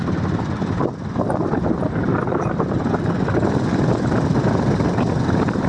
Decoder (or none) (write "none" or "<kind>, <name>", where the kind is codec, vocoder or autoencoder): vocoder, BigVGAN v2